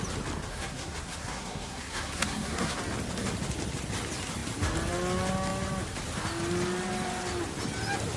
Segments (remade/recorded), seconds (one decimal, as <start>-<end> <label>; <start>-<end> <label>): 0.0-0.5 recorded; 0.5-2.8 remade; 2.8-8.2 recorded